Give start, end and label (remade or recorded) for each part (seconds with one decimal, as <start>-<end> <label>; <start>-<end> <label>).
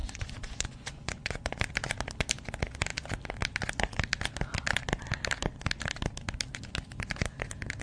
0.0-1.6 remade; 1.6-7.8 recorded